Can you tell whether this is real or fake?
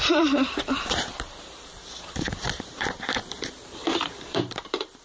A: fake